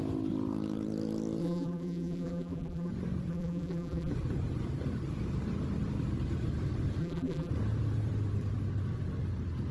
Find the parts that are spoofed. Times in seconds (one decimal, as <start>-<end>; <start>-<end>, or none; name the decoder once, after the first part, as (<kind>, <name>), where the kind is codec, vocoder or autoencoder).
1.4-2.9 (vocoder, BigVGAN v2); 3.3-4.1; 7.0-7.5